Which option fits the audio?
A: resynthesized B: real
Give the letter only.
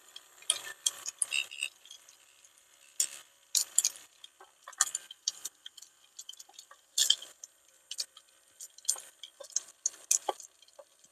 B